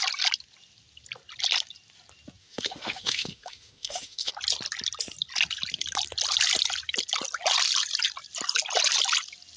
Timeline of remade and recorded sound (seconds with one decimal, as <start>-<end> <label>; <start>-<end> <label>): 0.0-2.4 recorded; 2.4-4.3 remade; 4.3-9.6 recorded